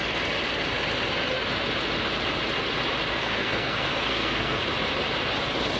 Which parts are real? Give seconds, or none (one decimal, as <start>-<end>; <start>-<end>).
0.0-3.1; 4.6-5.8